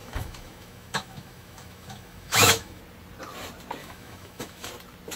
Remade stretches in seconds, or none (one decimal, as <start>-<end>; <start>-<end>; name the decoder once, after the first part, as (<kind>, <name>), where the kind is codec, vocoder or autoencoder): 0.0-2.8 (autoencoder, DAC-VAE); 3.8-4.7

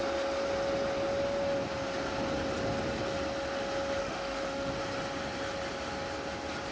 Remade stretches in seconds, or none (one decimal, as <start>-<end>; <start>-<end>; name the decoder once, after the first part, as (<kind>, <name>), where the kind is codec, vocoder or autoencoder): 4.0-4.7 (autoencoder, DAC-VAE)

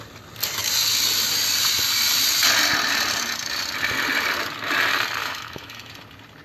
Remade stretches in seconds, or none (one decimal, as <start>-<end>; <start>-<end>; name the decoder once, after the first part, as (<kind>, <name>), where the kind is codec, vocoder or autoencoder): 5.2-5.9 (autoencoder, DAC-VAE)

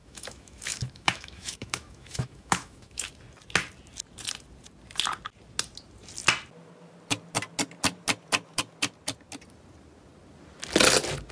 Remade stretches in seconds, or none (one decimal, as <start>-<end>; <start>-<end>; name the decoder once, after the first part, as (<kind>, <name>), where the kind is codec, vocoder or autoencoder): 0.0-3.1 (autoencoder, DAC-VAE)

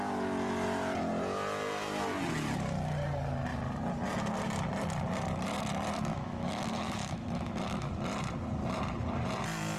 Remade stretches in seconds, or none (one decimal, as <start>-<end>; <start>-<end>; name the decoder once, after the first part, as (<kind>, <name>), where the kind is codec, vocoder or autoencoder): 6.1-7.9 (autoencoder, DAC-VAE)

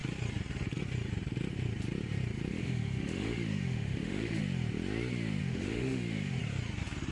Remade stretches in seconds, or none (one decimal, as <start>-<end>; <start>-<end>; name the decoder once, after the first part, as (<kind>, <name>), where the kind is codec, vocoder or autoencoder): 2.5-4.4 (autoencoder, DAC-VAE); 5.4-6.4

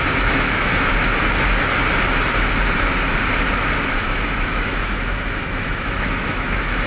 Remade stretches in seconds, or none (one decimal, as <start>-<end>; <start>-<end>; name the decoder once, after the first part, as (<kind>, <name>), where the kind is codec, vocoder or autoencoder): 0.0-0.7 (autoencoder, DAC-VAE); 3.9-6.9

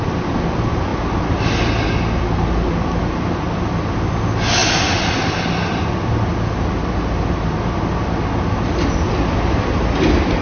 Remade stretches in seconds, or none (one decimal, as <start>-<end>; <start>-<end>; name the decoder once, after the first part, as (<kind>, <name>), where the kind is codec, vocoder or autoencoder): none